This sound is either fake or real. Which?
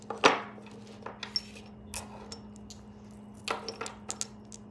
real